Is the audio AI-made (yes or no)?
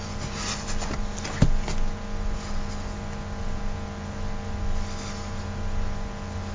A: no